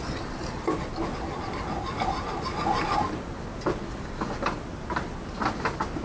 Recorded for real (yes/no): yes